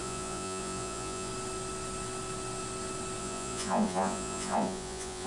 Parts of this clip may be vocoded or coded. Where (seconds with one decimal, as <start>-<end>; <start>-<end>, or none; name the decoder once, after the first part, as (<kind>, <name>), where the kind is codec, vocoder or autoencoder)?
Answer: 0.0-1.3 (vocoder, Vocos); 3.2-5.3